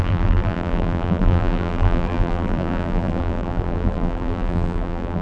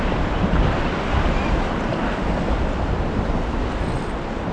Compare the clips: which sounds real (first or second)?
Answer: second